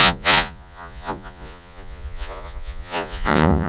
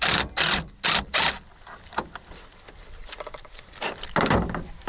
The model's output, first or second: first